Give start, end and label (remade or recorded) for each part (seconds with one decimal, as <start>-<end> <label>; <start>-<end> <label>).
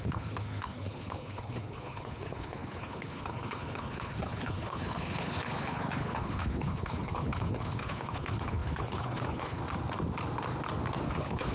0.0-9.6 remade; 9.6-11.1 recorded; 11.1-11.5 remade